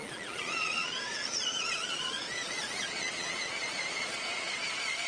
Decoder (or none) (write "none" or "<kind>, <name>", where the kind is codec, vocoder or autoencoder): vocoder, Vocos